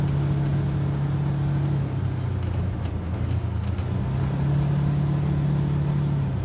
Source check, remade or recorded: recorded